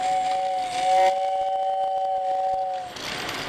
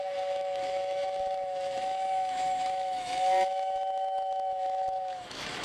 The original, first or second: first